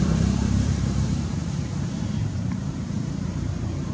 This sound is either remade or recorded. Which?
remade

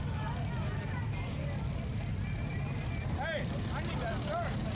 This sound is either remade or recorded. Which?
recorded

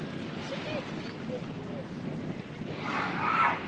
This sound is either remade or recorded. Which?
recorded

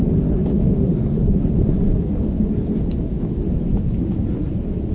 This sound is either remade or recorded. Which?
recorded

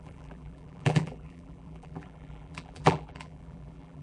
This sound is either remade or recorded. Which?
remade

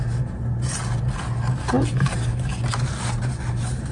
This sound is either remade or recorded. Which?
recorded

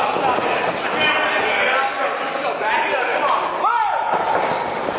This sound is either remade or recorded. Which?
recorded